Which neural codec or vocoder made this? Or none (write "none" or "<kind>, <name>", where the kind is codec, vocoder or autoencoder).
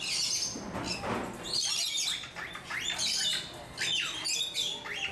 none